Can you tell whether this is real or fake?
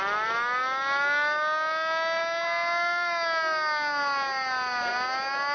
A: real